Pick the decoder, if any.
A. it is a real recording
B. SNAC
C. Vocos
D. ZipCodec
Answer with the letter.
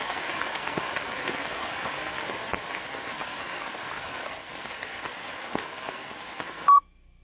B